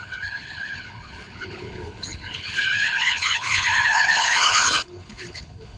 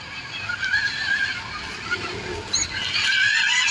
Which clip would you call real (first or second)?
second